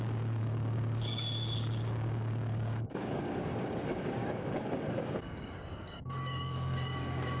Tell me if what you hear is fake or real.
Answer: fake